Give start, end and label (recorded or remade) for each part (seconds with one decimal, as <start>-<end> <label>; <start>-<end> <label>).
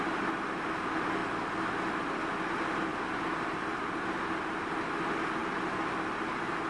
0.0-2.9 recorded; 2.9-4.0 remade; 4.0-6.7 recorded